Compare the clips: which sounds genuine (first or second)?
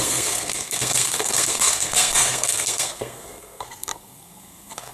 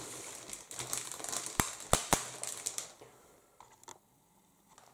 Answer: second